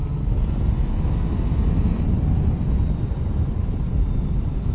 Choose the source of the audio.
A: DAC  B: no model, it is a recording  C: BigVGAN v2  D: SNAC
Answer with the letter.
B